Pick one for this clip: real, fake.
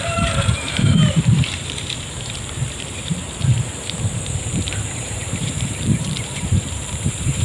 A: fake